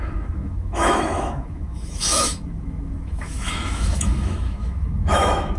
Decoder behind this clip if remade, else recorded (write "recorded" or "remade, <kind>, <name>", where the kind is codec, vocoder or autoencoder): remade, autoencoder, DAC-VAE